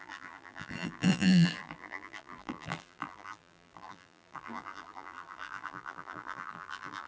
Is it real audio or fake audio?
fake